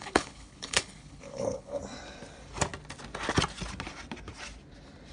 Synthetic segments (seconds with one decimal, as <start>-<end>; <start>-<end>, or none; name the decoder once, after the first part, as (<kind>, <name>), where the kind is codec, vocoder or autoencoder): 0.0-1.8 (codec, HILCodec)